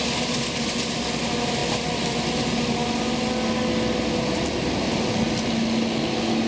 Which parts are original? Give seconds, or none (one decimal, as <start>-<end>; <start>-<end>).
0.0-6.5